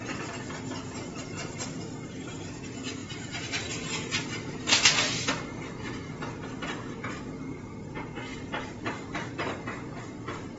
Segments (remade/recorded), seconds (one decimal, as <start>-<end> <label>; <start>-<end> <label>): 0.0-3.0 recorded; 3.0-3.7 remade; 3.7-8.3 recorded; 8.3-9.5 remade; 9.5-10.6 recorded